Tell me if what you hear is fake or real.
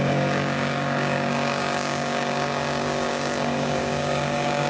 fake